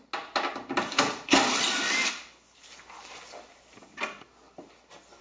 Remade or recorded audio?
recorded